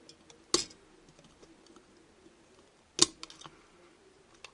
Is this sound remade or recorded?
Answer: recorded